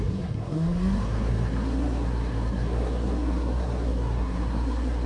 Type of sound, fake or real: fake